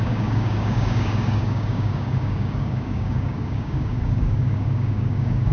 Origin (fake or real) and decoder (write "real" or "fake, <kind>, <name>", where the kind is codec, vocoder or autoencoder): fake, codec, DAC